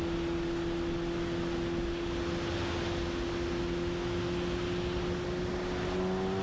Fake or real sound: real